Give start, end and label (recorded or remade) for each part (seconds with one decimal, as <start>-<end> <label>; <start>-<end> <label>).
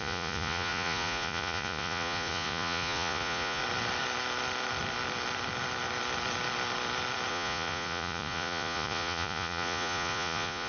0.0-3.6 remade; 3.6-7.3 recorded; 7.3-10.7 remade